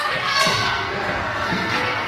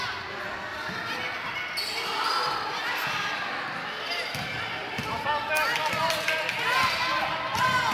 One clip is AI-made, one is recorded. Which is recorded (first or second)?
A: second